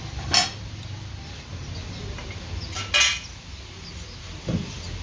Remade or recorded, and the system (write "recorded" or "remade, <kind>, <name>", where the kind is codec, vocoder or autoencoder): recorded